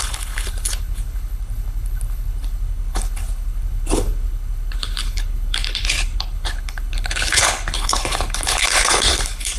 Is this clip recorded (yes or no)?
no